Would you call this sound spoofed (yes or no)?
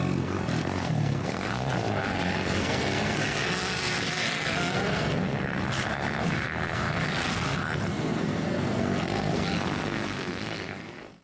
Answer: yes